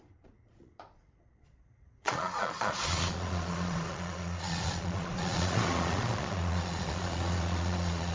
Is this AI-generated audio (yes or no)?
yes